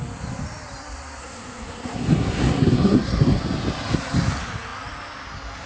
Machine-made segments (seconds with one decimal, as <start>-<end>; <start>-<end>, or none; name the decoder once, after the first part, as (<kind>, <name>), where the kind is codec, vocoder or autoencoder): 1.2-3.4 (codec, SNAC)

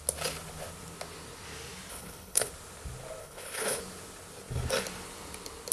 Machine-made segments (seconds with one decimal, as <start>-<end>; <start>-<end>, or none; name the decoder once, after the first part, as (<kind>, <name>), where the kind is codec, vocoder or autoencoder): 1.9-2.5 (codec, HILCodec); 3.2-3.8

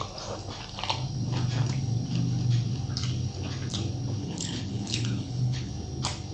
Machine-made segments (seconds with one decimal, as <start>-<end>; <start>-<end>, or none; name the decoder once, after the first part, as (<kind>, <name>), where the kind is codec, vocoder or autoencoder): 4.2-5.7 (codec, HILCodec)

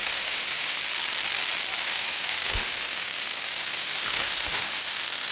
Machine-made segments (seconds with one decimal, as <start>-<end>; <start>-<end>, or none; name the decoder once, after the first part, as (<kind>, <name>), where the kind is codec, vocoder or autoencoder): 0.0-0.8 (autoencoder, DAC-VAE); 1.8-5.3

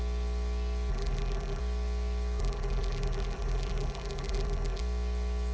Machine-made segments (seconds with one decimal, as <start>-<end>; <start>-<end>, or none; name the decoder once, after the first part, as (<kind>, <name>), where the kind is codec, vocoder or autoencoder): 0.9-1.6 (vocoder, BigVGAN v2); 2.4-4.8

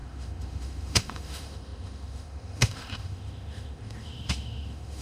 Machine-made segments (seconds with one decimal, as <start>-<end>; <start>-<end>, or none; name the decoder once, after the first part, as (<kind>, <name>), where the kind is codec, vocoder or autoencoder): 0.0-5.0 (autoencoder, DAC-VAE)

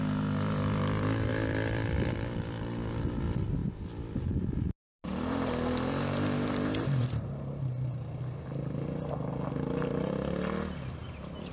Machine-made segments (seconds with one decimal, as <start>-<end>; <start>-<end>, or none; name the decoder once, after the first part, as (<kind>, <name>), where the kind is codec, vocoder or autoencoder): 1.3-2.6 (vocoder, BigVGAN v2); 3.6-7.5

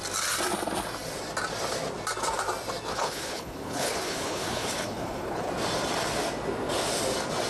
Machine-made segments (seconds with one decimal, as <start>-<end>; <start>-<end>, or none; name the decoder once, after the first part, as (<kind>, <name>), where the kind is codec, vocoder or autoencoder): 2.9-5.5 (codec, HILCodec)